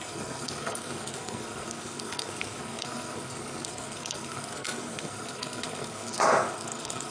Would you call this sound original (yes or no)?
no